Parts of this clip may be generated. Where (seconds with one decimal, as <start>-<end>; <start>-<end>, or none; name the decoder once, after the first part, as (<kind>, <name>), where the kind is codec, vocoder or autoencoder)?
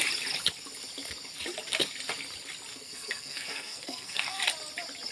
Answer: 2.7-4.4 (codec, SNAC)